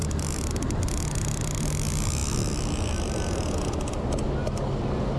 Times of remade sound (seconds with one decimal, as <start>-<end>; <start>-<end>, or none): none